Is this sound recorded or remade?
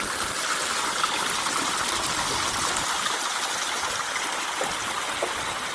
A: recorded